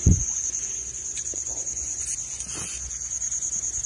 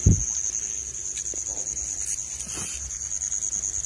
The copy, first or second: first